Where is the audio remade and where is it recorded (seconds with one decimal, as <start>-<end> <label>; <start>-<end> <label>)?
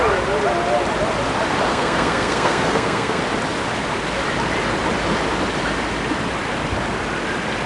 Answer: 0.0-1.7 recorded; 1.7-3.2 remade; 3.2-7.7 recorded